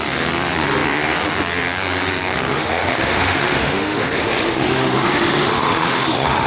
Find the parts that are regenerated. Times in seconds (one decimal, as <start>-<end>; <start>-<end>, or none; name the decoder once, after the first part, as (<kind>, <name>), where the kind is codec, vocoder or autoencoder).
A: 2.5-6.5 (autoencoder, DAC-VAE)